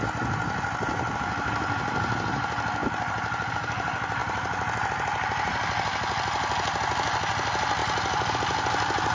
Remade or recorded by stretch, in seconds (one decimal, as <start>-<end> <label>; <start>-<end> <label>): 0.0-9.1 recorded